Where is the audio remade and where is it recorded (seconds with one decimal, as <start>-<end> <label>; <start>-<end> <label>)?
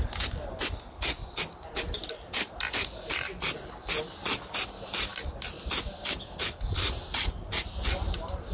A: 0.0-8.5 recorded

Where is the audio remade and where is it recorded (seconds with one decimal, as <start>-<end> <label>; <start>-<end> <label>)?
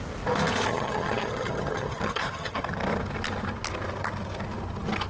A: 0.0-0.7 recorded; 0.7-2.7 remade; 2.7-5.1 recorded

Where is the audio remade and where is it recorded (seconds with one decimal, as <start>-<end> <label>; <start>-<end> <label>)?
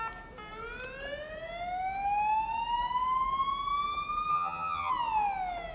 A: 0.0-4.3 recorded; 4.3-4.9 remade; 4.9-5.7 recorded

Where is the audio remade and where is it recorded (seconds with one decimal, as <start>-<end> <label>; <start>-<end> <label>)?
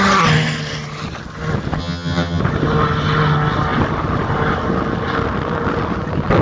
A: 0.0-1.8 recorded; 1.8-2.4 remade; 2.4-6.4 recorded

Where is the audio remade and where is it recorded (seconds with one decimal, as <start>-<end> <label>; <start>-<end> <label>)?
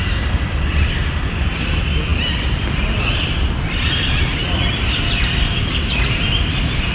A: 0.0-6.9 recorded